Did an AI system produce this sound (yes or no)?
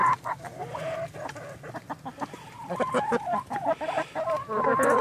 no